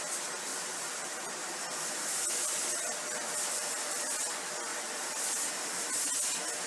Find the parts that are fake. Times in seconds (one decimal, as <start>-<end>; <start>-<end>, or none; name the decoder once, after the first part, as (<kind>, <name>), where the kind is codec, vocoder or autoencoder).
0.5-1.1 (vocoder, BigVGAN v2); 1.6-4.2; 4.7-5.5